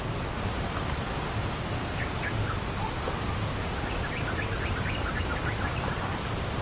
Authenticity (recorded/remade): recorded